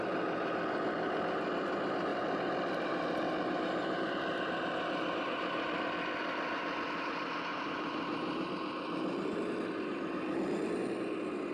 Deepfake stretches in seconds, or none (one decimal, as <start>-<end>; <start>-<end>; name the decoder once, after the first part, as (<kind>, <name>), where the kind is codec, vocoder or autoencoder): 2.1-5.8 (vocoder, BigVGAN v2); 7.5-8.5